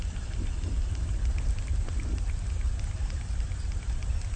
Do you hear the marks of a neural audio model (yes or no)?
no